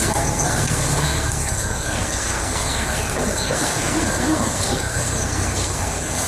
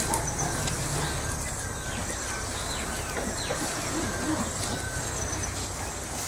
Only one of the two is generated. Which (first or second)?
first